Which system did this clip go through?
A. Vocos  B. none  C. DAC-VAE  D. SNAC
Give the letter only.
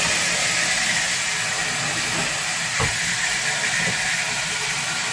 B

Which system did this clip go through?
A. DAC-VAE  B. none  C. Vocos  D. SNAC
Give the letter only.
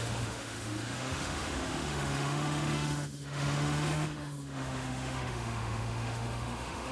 A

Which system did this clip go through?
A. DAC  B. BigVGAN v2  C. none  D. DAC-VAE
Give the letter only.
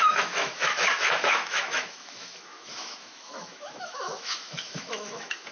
D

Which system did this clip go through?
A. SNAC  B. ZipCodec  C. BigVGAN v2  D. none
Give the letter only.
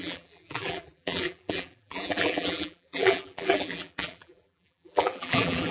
C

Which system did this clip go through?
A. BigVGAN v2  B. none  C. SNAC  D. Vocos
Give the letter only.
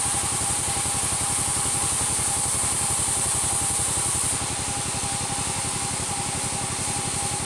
B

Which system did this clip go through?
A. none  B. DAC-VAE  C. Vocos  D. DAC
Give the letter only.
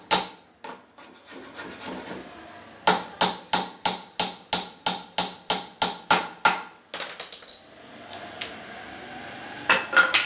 A